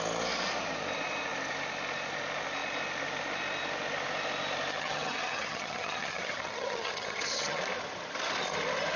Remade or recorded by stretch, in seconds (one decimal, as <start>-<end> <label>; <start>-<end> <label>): 0.0-4.7 recorded; 4.7-7.6 remade; 7.6-9.0 recorded